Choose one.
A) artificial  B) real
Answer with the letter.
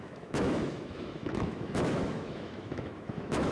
A